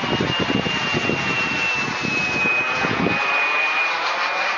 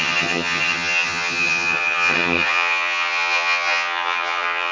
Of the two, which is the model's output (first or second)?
second